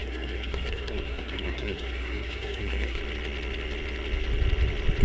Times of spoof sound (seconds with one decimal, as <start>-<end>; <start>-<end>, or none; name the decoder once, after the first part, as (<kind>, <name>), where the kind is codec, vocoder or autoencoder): 0.0-3.0 (codec, SNAC)